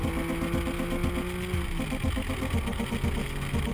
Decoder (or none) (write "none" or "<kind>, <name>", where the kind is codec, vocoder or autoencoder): none